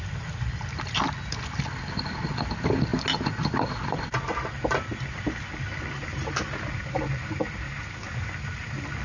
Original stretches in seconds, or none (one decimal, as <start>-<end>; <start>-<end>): 0.0-9.0